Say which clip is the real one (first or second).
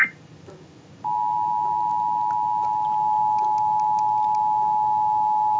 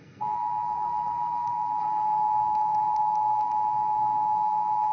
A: first